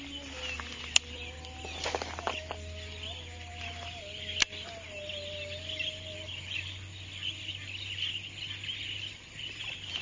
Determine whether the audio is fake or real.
real